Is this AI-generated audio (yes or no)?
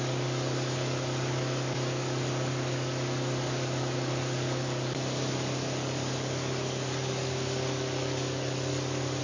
yes